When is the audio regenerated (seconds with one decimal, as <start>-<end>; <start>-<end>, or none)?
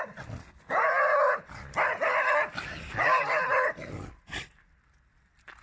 none